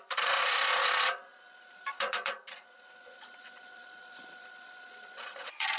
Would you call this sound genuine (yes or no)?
no